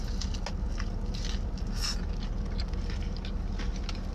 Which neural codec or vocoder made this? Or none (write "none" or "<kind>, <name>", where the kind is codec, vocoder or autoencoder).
none